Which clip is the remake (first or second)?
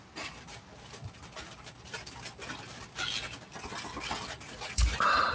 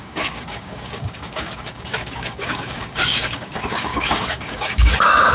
second